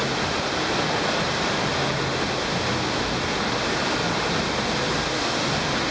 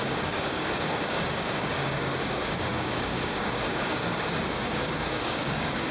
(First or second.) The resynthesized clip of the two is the second